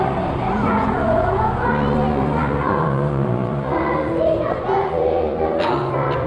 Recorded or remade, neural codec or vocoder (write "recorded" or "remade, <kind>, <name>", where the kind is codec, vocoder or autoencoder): remade, vocoder, Vocos